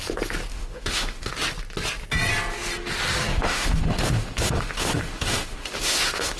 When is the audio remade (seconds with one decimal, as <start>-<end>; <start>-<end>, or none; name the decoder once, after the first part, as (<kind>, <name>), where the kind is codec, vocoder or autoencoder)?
0.5-1.3 (autoencoder, DAC-VAE); 3.3-6.4